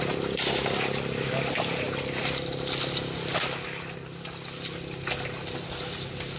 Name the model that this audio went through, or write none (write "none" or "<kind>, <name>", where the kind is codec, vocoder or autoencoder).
none